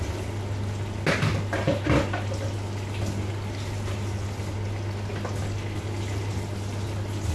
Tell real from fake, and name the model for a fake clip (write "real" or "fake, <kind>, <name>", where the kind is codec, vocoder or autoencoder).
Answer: real